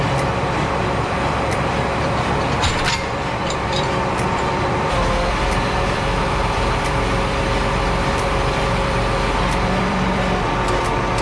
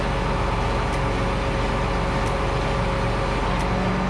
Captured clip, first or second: second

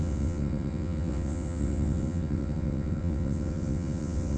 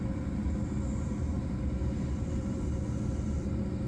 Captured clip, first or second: second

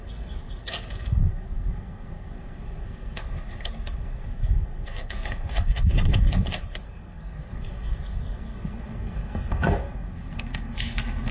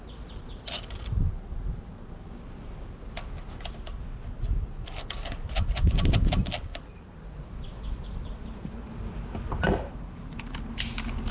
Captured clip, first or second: second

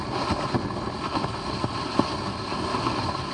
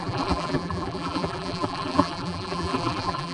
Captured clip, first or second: first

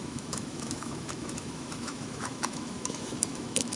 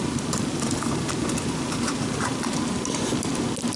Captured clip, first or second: second